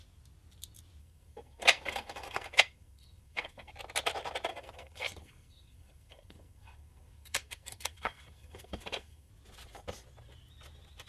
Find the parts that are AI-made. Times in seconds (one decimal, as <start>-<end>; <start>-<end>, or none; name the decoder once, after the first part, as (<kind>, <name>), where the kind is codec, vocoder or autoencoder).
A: 1.0-3.7 (codec, SNAC); 4.5-9.3